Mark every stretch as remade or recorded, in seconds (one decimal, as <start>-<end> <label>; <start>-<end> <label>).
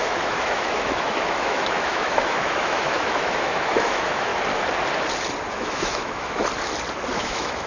0.0-4.3 remade; 4.3-5.5 recorded; 5.5-6.4 remade; 6.4-7.1 recorded; 7.1-7.7 remade